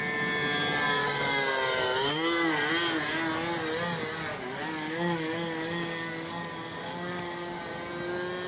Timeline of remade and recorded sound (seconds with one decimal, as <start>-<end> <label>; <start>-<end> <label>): 0.0-1.0 recorded; 1.0-2.7 remade; 2.7-4.3 recorded; 4.3-7.6 remade; 7.6-8.5 recorded